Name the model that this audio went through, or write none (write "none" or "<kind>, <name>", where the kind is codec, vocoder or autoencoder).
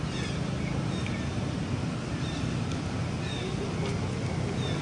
none